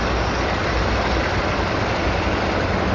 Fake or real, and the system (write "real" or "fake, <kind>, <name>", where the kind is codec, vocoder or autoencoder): real